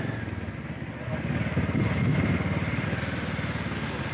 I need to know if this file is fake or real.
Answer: real